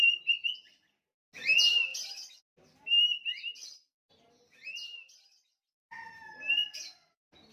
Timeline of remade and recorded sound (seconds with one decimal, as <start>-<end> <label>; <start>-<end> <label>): 0.0-7.5 recorded